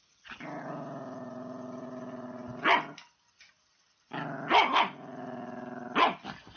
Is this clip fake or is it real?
real